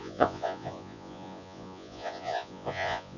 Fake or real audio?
fake